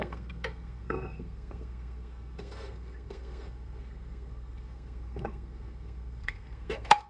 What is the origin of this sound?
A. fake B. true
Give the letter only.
A